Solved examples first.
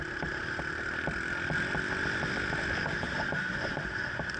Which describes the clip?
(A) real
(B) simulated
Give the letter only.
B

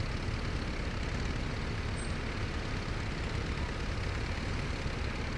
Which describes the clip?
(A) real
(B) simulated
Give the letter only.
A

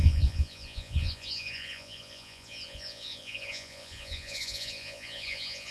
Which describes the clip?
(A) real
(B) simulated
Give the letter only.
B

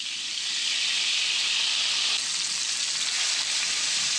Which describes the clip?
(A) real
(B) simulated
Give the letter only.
A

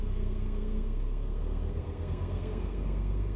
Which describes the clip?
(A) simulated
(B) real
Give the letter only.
A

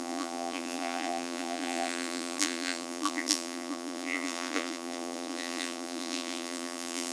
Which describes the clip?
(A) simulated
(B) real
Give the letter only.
A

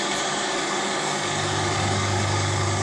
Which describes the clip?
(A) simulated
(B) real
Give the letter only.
A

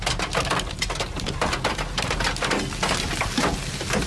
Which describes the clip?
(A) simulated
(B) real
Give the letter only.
B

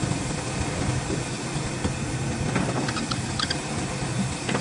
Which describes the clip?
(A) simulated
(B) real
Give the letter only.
B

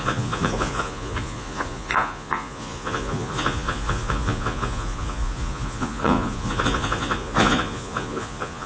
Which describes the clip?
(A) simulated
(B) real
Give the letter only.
A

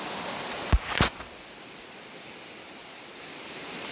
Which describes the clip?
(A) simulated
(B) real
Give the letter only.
B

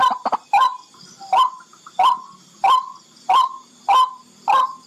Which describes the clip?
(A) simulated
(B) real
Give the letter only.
B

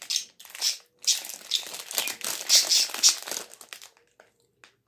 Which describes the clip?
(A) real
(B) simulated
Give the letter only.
A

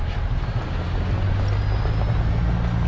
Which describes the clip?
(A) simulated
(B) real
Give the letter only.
B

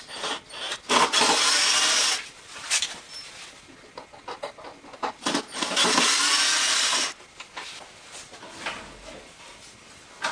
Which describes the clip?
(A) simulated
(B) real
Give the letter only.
B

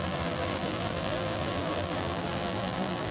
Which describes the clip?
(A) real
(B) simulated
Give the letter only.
B